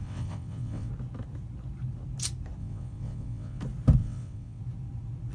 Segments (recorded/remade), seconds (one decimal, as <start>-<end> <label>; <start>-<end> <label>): 0.0-0.9 remade; 0.9-2.6 recorded; 2.6-3.6 remade; 3.6-4.0 recorded; 4.0-4.6 remade; 4.6-5.3 recorded